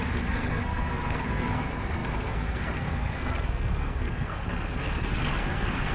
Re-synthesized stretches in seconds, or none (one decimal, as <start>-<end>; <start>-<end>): 0.0-5.9